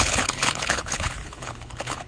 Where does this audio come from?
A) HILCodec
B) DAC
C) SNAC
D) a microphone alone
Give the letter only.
A